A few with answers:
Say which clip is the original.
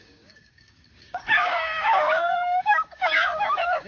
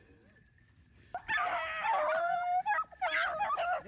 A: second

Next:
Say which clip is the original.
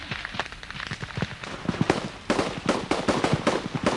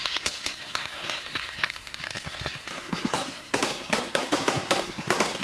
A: first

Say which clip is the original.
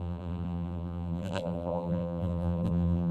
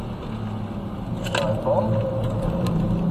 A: second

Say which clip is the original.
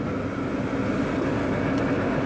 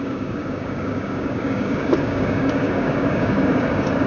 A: first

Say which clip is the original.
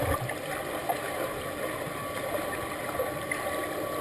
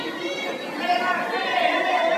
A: first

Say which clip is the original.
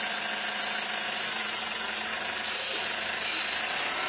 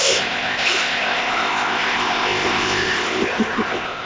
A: first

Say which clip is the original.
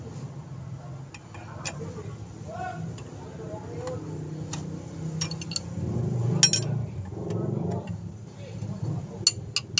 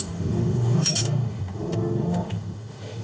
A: first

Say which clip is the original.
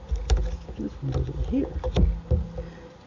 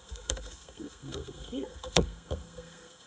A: first